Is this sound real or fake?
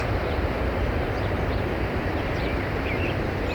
fake